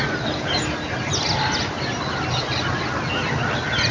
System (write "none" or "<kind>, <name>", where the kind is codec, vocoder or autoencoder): none